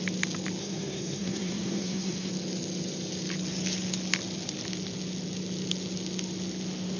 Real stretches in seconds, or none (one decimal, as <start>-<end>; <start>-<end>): 0.0-0.6; 2.3-7.0